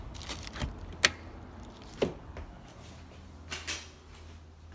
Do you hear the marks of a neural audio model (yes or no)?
no